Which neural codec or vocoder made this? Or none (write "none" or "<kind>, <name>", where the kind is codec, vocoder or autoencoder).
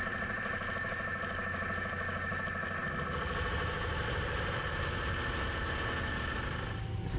none